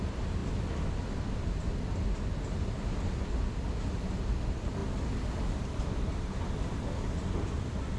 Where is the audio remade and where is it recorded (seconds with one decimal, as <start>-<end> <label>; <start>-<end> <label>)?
0.0-0.4 remade; 0.4-3.8 recorded; 3.8-4.8 remade; 4.8-5.5 recorded; 5.5-8.0 remade